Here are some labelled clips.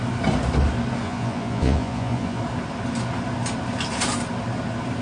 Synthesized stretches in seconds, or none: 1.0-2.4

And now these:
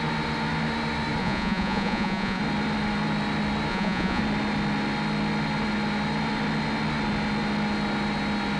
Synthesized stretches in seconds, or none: 1.2-2.4; 3.7-4.2